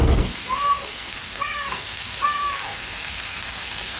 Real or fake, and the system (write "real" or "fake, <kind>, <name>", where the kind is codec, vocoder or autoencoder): fake, codec, SNAC